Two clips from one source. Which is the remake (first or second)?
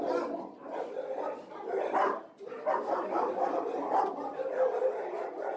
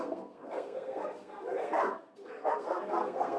second